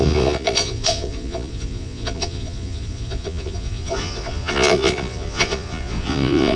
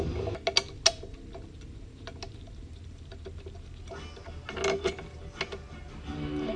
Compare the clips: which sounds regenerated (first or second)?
first